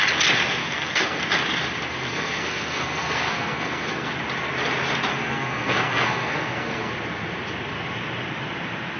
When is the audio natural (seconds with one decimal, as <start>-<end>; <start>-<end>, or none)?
0.0-0.6; 1.2-2.1; 4.1-5.1; 6.9-9.0